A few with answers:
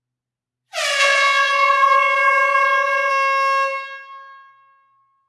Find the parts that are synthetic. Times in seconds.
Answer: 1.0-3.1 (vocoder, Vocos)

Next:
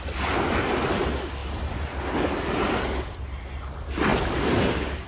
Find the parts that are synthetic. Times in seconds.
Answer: none

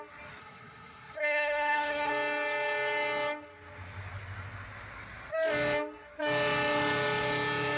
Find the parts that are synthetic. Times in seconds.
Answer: 0.4-2.1 (codec, SNAC)

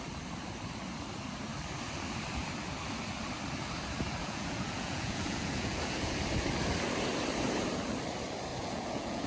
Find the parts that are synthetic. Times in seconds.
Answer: 4.2-6.2 (vocoder, Vocos); 8.5-9.3

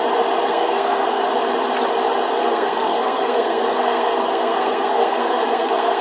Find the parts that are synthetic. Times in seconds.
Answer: 0.5-1.2 (codec, SNAC); 2.4-6.0

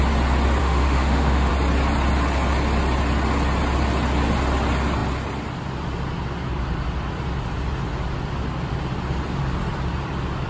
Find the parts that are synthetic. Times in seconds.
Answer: 0.6-1.5 (autoencoder, DAC-VAE)

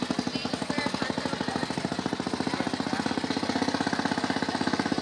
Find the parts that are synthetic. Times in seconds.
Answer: none